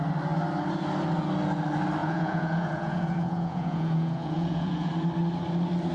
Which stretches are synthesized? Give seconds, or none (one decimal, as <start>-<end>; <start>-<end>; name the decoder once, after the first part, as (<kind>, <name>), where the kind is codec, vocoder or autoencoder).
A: 2.0-4.9 (vocoder, Vocos)